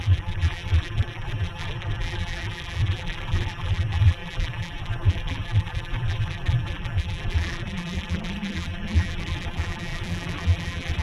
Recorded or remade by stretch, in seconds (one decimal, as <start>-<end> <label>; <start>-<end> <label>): 0.0-11.0 remade